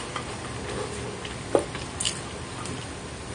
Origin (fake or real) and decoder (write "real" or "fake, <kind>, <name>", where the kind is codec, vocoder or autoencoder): real